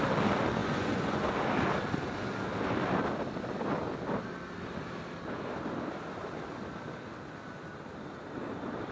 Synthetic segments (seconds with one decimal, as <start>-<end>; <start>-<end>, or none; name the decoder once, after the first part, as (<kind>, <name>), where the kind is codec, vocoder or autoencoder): 0.6-1.4 (vocoder, Vocos)

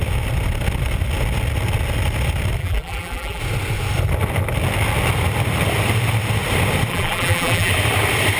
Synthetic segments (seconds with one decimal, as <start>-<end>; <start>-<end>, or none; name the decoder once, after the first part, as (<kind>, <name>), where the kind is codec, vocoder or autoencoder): 2.6-3.4 (vocoder, BigVGAN v2); 6.9-7.7

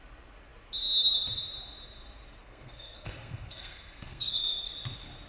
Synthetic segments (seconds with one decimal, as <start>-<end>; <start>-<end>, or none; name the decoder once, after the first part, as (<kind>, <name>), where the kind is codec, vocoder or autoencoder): 2.4-4.7 (codec, SNAC)

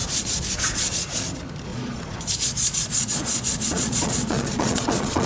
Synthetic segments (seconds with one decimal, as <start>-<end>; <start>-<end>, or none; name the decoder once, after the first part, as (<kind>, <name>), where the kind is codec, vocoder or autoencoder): 0.0-1.2 (vocoder, Vocos); 1.7-5.3

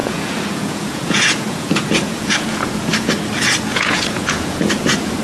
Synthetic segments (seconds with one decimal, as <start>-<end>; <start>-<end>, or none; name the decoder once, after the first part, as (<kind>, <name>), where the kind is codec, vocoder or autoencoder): 0.0-3.1 (vocoder, Vocos); 3.7-5.2

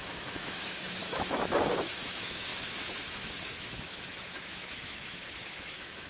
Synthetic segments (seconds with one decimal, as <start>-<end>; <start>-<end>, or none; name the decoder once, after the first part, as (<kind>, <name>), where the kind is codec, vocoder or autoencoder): 0.0-6.1 (autoencoder, DAC-VAE)

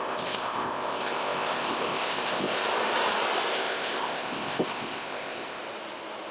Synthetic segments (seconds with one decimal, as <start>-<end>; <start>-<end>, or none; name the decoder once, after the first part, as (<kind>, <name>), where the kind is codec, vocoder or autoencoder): 0.0-2.6 (codec, ZipCodec); 3.5-5.6